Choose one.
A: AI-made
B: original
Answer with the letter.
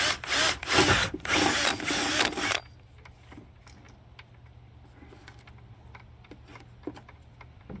B